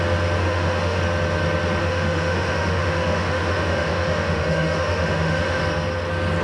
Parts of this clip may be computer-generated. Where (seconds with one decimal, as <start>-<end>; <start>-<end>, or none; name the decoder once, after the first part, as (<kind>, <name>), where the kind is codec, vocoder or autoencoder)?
0.4-1.0 (autoencoder, DAC-VAE); 1.8-5.6